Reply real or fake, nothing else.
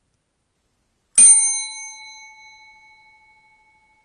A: real